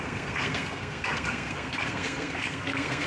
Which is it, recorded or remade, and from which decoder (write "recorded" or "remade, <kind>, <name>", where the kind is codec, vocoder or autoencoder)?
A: remade, codec, SNAC